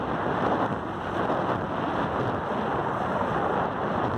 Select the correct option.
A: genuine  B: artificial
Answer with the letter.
A